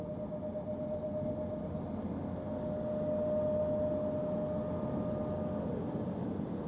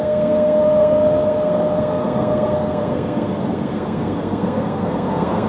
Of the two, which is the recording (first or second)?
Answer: first